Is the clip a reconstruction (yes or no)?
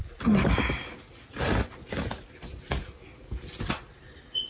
no